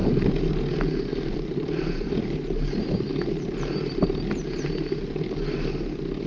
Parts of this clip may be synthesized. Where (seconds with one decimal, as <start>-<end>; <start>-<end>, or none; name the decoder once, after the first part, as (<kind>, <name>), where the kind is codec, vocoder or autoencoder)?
0.0-0.5 (vocoder, BigVGAN v2); 1.1-3.1